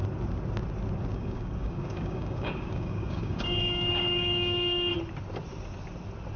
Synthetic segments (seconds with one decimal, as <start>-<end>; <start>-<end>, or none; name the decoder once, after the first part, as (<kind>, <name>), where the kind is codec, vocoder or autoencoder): 1.1-4.9 (codec, DAC)